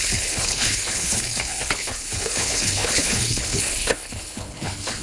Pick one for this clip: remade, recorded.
remade